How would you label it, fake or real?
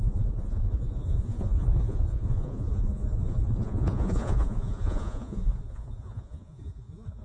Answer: fake